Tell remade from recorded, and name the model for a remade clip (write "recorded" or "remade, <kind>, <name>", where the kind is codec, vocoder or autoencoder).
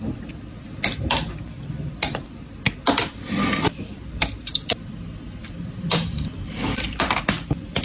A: recorded